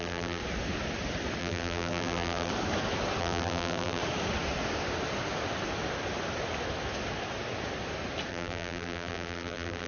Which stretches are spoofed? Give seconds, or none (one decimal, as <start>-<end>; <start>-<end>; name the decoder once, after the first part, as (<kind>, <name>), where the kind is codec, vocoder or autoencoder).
0.0-0.4 (vocoder, BigVGAN v2); 1.4-2.5; 3.2-4.0; 8.3-9.9